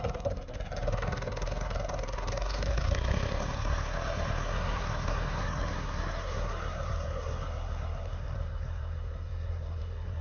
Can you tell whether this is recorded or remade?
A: remade